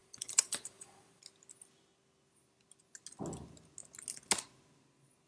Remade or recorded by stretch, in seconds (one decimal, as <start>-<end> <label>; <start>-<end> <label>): 0.0-1.2 remade; 1.2-5.3 recorded